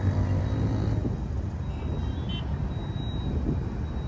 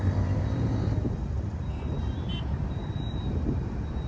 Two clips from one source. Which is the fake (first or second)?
second